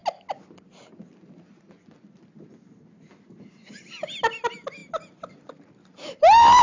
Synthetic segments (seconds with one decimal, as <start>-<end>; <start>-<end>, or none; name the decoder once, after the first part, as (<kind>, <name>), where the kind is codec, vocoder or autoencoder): none